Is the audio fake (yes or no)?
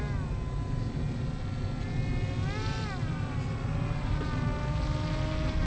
no